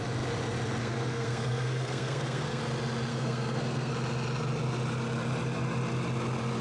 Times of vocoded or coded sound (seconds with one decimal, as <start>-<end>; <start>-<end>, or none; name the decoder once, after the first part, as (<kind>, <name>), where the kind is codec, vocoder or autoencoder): 0.8-2.6 (codec, SNAC); 3.1-3.9